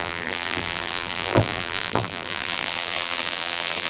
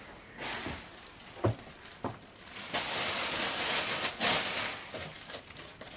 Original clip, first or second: second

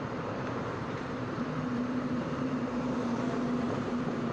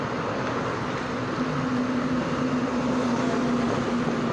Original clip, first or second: second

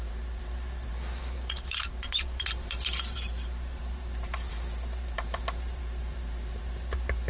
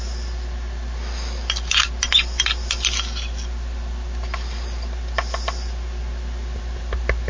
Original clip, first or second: second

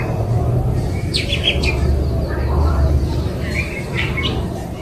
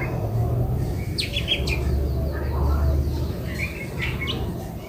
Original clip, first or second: second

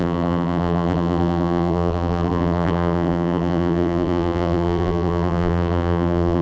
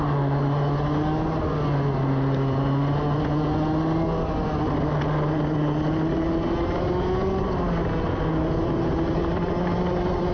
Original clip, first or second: second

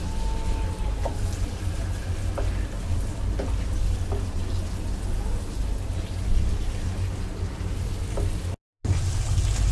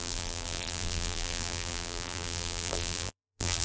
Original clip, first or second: first